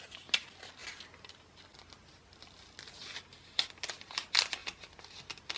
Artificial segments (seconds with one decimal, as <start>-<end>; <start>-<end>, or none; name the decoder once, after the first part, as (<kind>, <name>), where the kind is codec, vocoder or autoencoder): none